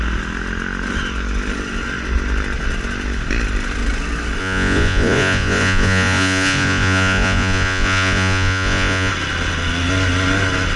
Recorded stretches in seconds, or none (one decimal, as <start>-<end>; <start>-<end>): 0.0-4.4; 9.1-10.8